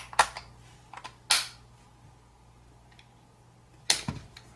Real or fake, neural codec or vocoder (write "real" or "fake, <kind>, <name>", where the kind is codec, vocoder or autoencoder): real